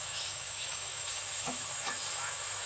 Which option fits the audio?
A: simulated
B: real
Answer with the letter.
A